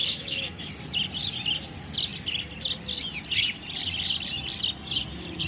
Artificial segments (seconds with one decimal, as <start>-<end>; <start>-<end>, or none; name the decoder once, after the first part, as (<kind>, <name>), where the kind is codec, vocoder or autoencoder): 0.0-0.7 (autoencoder, DAC-VAE)